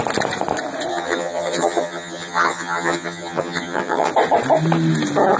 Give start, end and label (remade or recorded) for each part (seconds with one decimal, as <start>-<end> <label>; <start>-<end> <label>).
0.0-0.9 recorded; 0.9-4.1 remade; 4.1-5.4 recorded